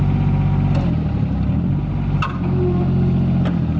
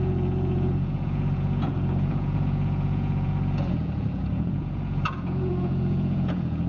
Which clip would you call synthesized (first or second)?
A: second